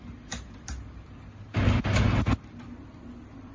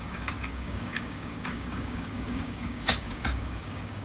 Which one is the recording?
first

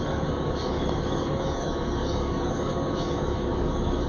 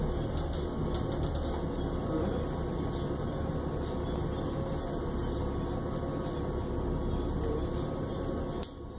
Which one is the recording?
second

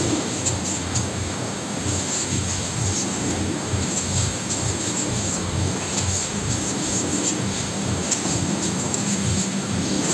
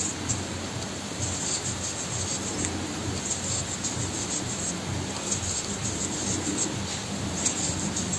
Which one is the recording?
second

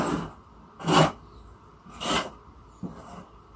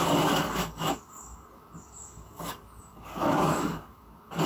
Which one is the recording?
first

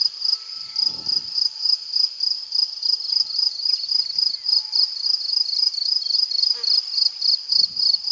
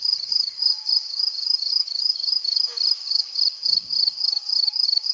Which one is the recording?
first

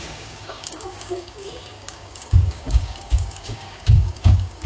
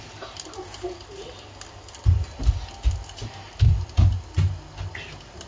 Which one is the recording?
second